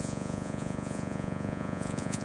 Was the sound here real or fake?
fake